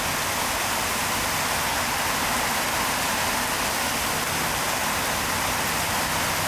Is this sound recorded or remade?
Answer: recorded